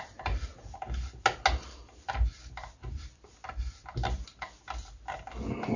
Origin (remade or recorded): recorded